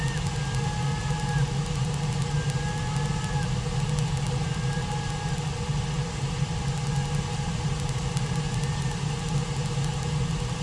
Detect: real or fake real